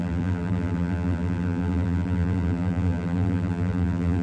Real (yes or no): no